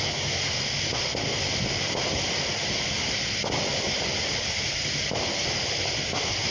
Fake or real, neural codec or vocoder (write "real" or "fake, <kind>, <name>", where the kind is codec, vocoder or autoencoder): real